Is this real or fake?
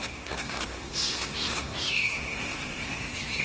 fake